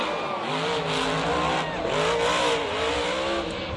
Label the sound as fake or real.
real